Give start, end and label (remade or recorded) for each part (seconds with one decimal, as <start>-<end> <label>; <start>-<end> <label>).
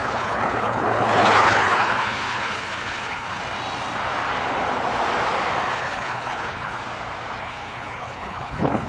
0.0-3.4 remade; 3.4-5.7 recorded; 5.7-6.8 remade; 6.8-7.4 recorded; 7.4-8.9 remade